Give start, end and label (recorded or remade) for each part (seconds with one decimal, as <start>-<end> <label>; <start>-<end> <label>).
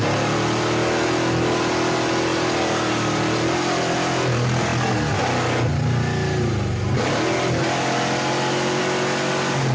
0.0-9.7 recorded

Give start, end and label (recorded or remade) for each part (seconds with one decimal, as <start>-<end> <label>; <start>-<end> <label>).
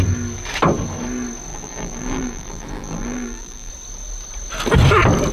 0.0-1.5 recorded; 1.5-3.7 remade; 3.7-5.3 recorded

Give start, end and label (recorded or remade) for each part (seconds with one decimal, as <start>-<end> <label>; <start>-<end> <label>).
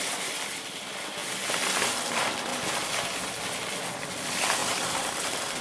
0.0-1.2 remade; 1.2-2.1 recorded; 2.1-2.5 remade; 2.5-4.1 recorded; 4.1-5.6 remade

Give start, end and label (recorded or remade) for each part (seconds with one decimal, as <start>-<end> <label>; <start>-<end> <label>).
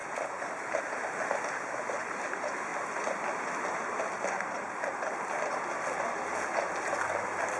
0.0-2.7 remade; 2.7-7.6 recorded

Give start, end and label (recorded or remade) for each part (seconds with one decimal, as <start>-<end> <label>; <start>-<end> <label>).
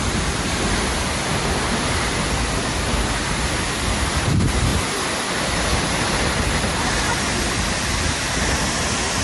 0.0-4.7 recorded; 4.7-5.3 remade; 5.3-5.7 recorded; 5.7-6.4 remade; 6.4-9.2 recorded